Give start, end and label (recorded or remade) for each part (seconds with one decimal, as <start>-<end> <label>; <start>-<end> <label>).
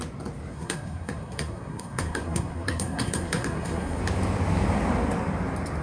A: 0.0-0.5 recorded; 0.5-4.0 remade; 4.0-5.8 recorded